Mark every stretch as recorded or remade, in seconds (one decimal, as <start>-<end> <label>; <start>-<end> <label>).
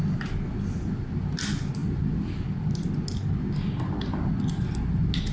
0.0-5.3 recorded